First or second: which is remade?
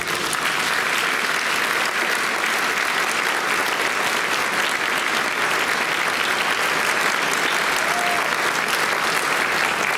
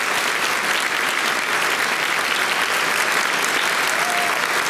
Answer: second